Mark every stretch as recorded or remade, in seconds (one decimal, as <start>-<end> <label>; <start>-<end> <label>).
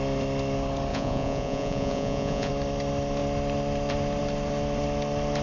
0.0-0.9 recorded; 0.9-2.5 remade; 2.5-5.4 recorded